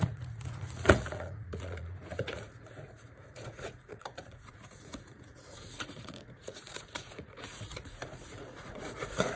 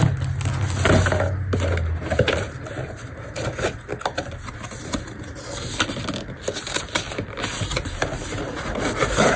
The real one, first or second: second